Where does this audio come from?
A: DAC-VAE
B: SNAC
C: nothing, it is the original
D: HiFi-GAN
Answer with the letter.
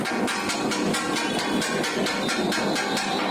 C